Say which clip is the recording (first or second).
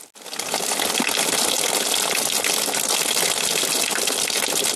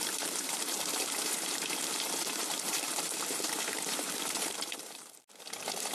first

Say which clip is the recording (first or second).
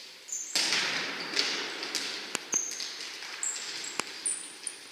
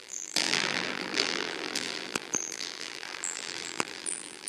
first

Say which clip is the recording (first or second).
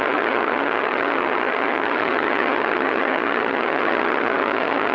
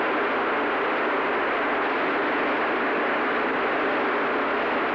second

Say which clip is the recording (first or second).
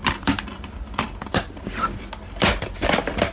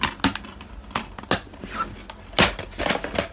second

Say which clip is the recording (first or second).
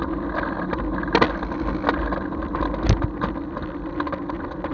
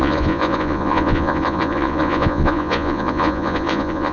first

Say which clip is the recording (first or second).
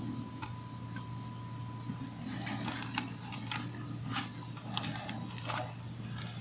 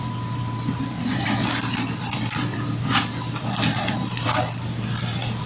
first